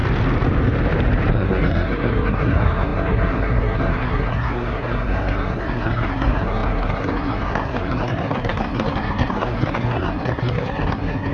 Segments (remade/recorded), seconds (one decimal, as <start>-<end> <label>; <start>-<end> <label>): 0.0-1.3 recorded; 1.3-11.3 remade